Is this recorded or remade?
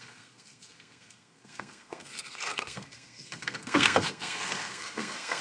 remade